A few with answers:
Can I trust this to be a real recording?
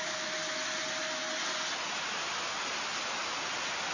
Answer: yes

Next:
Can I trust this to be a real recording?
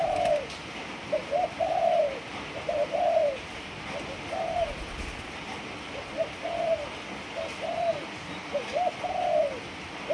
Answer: yes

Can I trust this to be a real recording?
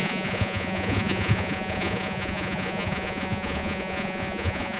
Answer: no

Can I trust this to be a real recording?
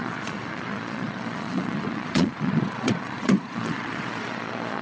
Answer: no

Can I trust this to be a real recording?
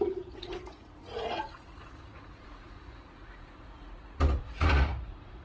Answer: no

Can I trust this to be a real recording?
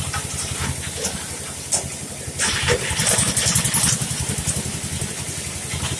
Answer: yes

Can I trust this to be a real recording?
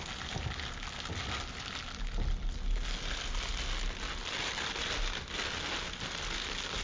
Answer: yes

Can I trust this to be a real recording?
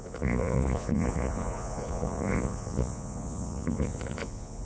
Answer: no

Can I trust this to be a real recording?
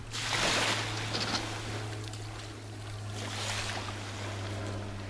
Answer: yes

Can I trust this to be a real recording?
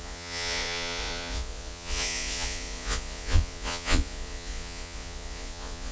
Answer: no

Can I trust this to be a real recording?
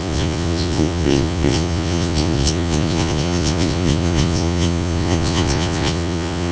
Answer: no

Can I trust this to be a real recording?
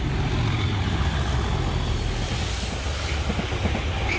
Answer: yes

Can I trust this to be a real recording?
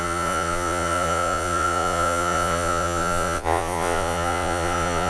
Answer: no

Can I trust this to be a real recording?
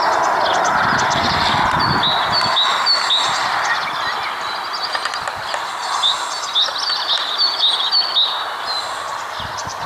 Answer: yes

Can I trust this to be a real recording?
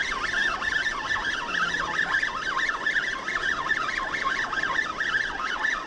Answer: yes